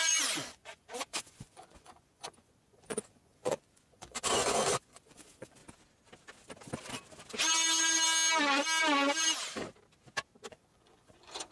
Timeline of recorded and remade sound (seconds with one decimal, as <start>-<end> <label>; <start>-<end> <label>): 0.0-5.6 remade; 5.6-10.5 recorded; 10.5-11.5 remade